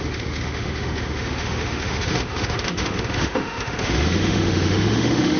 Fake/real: fake